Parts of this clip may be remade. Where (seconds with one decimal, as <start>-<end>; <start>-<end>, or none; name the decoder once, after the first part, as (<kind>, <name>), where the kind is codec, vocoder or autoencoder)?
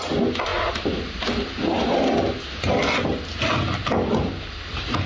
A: none